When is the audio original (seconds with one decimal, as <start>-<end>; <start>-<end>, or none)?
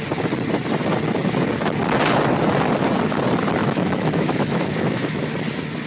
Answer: 0.0-3.6; 5.2-5.9